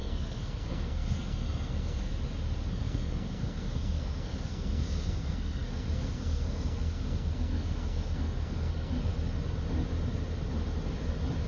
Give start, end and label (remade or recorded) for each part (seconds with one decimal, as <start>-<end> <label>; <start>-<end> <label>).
0.0-2.1 remade; 2.1-2.7 recorded; 2.7-9.1 remade; 9.1-11.5 recorded

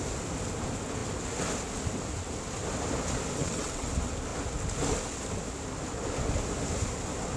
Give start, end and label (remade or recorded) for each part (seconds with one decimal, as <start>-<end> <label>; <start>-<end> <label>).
0.0-3.4 recorded; 3.4-3.9 remade; 3.9-7.4 recorded

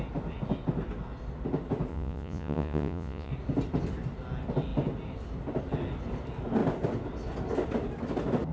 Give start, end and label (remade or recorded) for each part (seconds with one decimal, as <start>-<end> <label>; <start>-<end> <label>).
0.0-1.9 recorded; 1.9-3.3 remade; 3.3-8.5 recorded

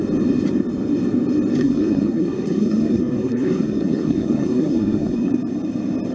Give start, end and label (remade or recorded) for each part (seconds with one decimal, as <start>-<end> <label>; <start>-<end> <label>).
0.0-1.6 recorded; 1.6-5.3 remade; 5.3-6.1 recorded

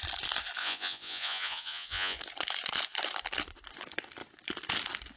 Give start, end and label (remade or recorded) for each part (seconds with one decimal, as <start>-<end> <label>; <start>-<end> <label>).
0.0-0.6 recorded; 0.6-2.2 remade; 2.2-5.2 recorded

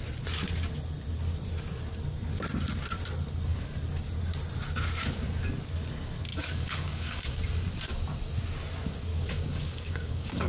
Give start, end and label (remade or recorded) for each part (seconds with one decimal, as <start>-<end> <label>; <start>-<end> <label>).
0.0-6.3 recorded; 6.3-7.4 remade; 7.4-9.1 recorded; 9.1-10.5 remade